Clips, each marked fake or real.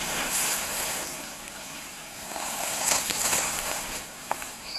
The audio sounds fake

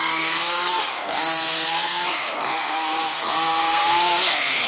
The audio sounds fake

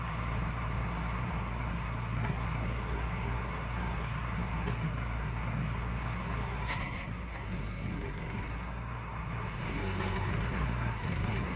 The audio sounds fake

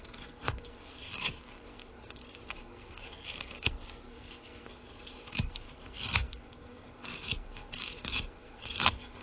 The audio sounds fake